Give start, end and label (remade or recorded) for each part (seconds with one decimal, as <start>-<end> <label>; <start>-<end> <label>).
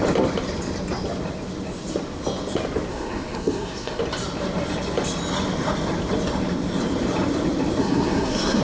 0.0-2.9 recorded; 2.9-4.0 remade; 4.0-7.8 recorded; 7.8-8.6 remade